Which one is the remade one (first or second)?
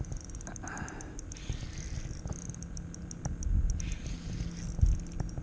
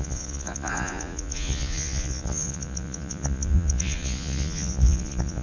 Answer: second